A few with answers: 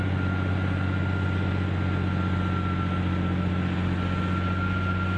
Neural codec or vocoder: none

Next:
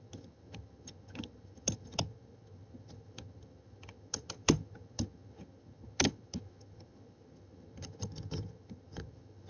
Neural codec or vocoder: vocoder, HiFi-GAN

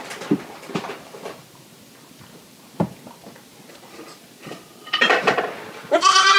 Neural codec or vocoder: none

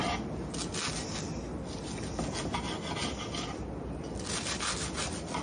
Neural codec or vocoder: none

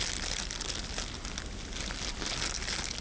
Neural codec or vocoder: none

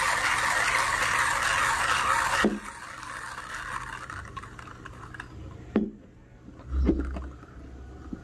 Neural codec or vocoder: none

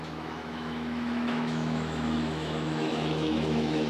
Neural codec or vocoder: autoencoder, DAC-VAE